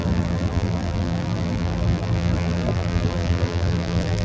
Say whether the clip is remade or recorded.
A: remade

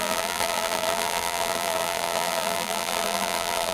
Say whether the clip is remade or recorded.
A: remade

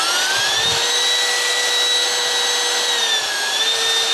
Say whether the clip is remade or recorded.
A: recorded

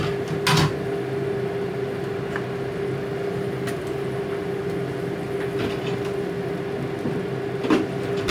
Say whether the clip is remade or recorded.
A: recorded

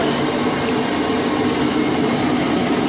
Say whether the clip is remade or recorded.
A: recorded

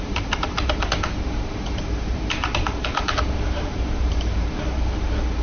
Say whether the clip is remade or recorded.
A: remade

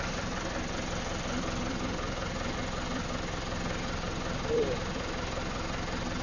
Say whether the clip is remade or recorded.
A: remade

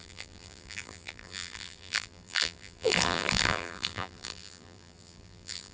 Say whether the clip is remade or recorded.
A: remade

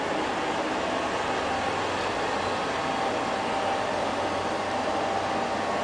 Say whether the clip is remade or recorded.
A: recorded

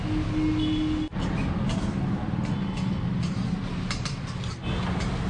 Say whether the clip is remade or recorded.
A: recorded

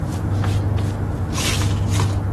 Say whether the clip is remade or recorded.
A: recorded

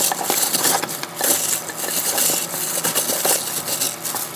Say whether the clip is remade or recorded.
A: recorded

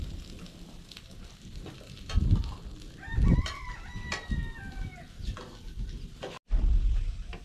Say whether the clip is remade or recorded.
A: recorded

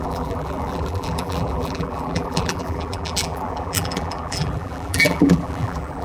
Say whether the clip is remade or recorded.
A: remade